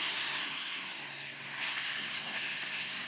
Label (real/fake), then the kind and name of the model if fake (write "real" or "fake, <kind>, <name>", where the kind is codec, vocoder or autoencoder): fake, codec, SNAC